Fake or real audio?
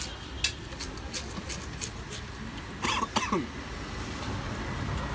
real